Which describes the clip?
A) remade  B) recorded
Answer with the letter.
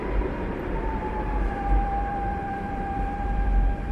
A